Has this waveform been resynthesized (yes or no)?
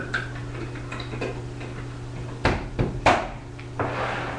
no